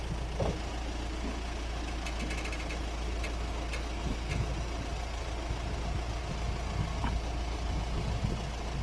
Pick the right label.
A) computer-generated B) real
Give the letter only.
B